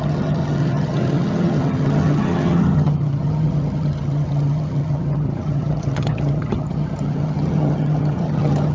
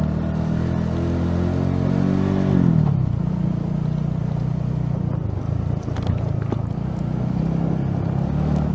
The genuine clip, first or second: second